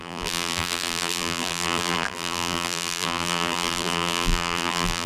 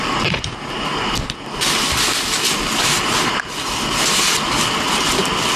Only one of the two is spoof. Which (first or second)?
first